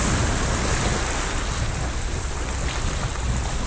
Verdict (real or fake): real